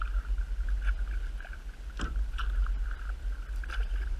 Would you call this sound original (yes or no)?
yes